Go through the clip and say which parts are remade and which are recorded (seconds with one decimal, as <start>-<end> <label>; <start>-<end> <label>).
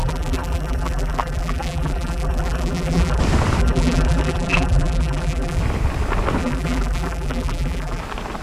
0.0-3.2 remade; 3.2-3.6 recorded; 3.6-5.6 remade; 5.6-6.4 recorded; 6.4-8.0 remade; 8.0-8.4 recorded